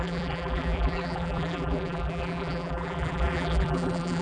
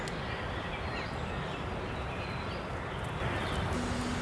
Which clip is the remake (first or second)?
first